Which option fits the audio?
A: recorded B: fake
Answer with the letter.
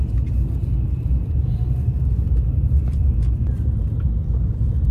A